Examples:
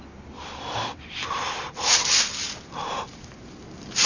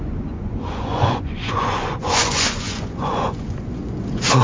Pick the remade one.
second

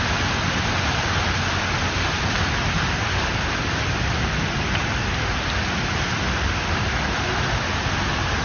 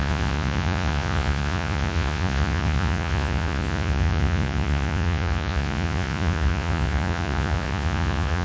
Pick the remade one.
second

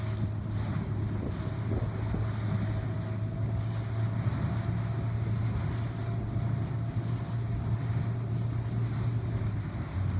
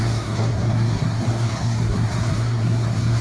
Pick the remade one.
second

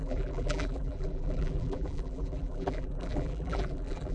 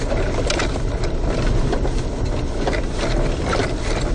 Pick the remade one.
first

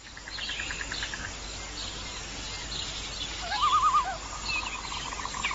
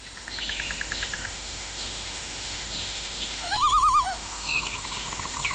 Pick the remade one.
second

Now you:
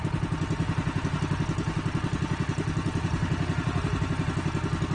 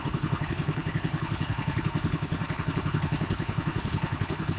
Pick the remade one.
second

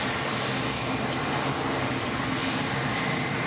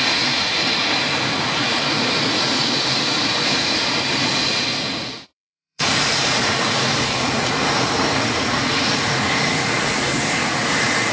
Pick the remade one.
second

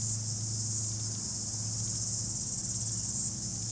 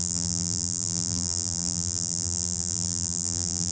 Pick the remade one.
second